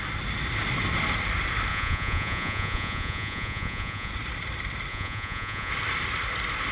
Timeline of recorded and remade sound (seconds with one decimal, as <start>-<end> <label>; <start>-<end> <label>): 0.0-1.7 recorded; 1.7-4.1 remade; 4.1-4.9 recorded; 4.9-5.7 remade; 5.7-6.7 recorded